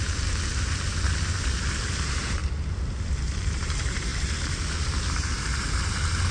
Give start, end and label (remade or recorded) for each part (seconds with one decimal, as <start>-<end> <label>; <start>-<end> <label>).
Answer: 0.0-0.5 remade; 0.5-1.7 recorded; 1.7-2.4 remade; 2.4-3.4 recorded; 3.4-6.3 remade